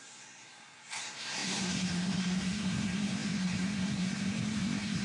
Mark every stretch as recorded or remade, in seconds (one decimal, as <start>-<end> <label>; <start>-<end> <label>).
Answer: 0.0-5.0 remade